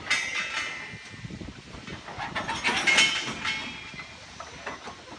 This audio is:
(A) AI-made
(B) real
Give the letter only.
B